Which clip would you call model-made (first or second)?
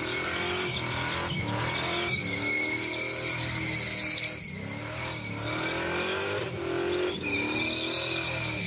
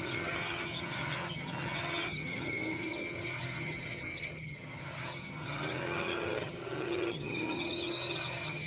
second